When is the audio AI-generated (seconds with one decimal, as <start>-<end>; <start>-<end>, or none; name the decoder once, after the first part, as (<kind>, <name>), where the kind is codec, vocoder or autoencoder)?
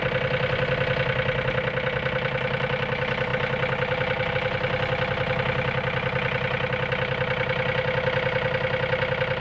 none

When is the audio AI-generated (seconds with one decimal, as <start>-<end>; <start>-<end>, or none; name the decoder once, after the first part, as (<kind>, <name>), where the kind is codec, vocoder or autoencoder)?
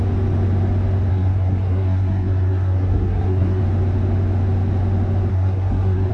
1.1-3.6 (codec, SNAC); 5.3-6.1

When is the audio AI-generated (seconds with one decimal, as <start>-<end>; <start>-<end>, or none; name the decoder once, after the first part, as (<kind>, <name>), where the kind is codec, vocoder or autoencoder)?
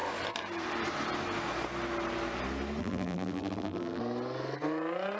2.8-4.0 (vocoder, BigVGAN v2)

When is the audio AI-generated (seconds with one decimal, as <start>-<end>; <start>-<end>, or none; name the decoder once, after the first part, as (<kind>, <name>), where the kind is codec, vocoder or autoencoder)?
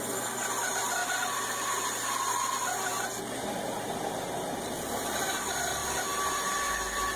1.0-2.4 (vocoder, BigVGAN v2); 5.8-7.2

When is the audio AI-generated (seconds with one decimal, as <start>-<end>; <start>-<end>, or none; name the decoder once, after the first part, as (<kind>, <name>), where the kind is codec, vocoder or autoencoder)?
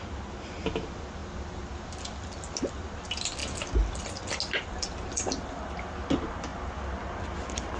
none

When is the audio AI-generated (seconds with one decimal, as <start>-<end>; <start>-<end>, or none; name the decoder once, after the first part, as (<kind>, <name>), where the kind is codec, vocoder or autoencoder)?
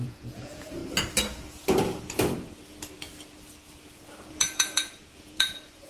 0.0-0.8 (vocoder, Vocos); 4.3-5.9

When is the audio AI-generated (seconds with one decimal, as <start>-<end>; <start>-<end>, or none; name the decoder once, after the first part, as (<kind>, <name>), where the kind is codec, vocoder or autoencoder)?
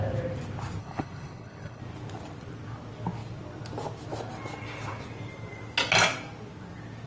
0.8-1.8 (codec, HILCodec)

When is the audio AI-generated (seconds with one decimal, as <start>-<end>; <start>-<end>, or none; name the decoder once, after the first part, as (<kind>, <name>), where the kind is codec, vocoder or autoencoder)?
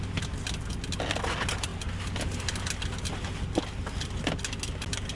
none